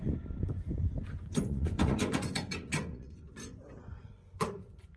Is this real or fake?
fake